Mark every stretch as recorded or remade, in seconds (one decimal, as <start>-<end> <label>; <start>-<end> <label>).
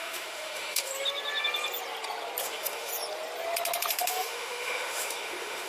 0.0-0.9 remade; 0.9-2.4 recorded; 2.4-2.9 remade; 2.9-3.9 recorded; 3.9-5.7 remade